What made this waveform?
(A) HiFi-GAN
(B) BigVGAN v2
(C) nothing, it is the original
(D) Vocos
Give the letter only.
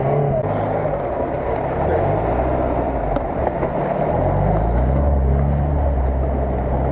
C